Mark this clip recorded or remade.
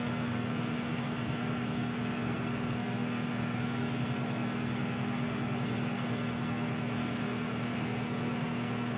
remade